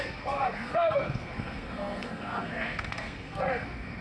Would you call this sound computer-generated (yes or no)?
yes